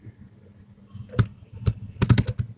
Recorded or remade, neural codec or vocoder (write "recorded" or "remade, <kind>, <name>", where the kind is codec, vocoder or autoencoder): recorded